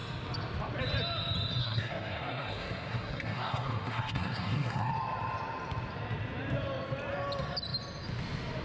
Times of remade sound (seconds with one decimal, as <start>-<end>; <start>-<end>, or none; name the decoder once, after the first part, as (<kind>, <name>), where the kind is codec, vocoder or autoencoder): 1.6-4.9 (codec, SNAC)